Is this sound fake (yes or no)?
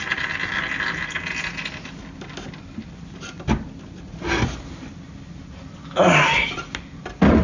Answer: no